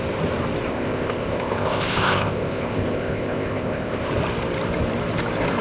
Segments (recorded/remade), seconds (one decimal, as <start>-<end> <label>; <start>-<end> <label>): 0.0-0.7 recorded; 0.7-4.1 remade; 4.1-5.6 recorded